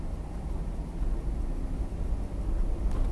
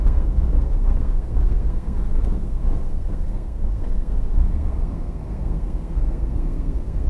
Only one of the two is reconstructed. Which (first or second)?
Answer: second